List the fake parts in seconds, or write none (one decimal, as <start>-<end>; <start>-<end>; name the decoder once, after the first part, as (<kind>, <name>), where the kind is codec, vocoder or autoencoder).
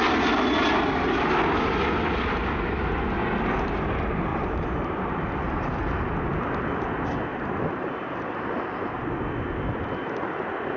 4.3-5.2 (vocoder, BigVGAN v2); 7.3-9.1